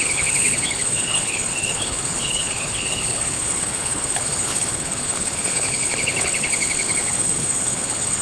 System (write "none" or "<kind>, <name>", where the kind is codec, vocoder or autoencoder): codec, HILCodec